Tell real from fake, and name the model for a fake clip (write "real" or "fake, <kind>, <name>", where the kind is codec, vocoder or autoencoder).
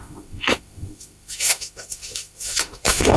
fake, autoencoder, DAC-VAE